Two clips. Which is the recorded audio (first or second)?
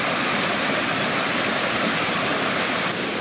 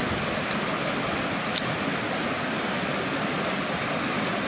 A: second